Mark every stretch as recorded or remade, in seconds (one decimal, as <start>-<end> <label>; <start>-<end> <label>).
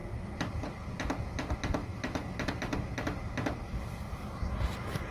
0.0-5.1 recorded